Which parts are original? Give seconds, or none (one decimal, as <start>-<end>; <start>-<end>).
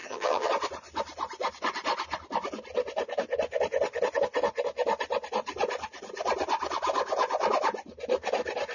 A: 0.5-8.7